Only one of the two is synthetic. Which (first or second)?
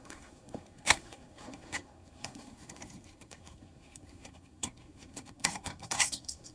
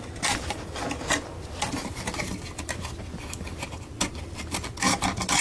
first